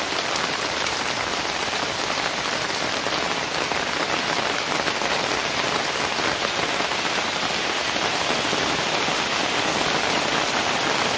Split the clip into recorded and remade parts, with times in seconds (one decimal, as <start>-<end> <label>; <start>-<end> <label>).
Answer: 0.0-11.2 recorded